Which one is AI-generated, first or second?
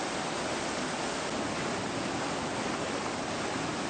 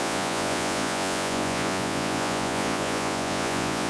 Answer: second